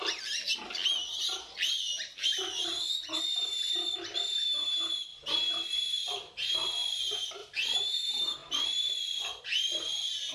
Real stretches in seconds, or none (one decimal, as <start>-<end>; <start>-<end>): 0.0-5.1; 5.9-7.4; 8.0-10.3